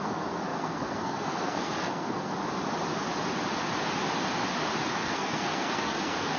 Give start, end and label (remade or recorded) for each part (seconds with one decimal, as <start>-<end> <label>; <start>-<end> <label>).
0.0-2.3 remade; 2.3-4.9 recorded; 4.9-6.4 remade